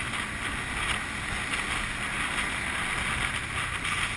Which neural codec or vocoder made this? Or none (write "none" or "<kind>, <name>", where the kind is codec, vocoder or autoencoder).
none